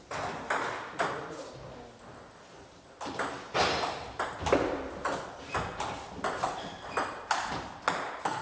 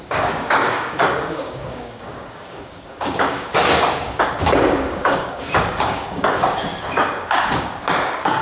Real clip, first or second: first